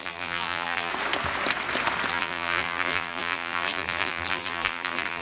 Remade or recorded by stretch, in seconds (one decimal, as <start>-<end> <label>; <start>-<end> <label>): 0.0-0.9 remade; 0.9-2.1 recorded; 2.1-5.2 remade